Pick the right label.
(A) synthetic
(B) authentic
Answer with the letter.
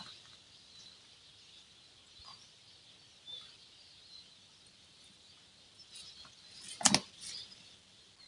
B